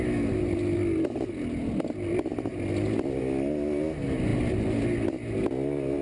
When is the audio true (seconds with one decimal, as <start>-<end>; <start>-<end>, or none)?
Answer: 0.0-6.0